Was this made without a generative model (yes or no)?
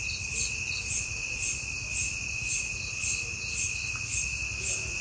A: yes